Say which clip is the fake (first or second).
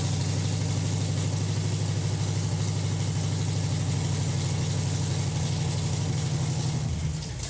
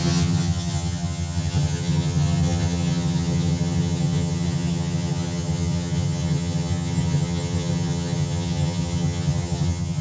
second